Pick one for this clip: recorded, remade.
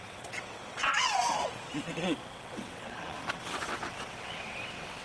remade